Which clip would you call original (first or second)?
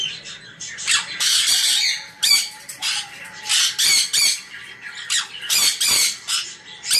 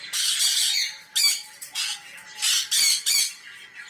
second